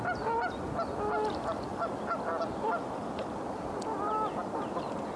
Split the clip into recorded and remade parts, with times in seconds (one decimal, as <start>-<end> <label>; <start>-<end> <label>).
0.0-5.2 recorded